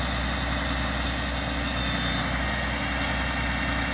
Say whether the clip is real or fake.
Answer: real